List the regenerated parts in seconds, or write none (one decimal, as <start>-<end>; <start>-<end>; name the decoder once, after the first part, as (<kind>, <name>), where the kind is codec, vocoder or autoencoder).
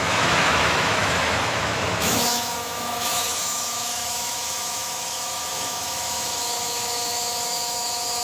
0.0-8.2 (autoencoder, DAC-VAE)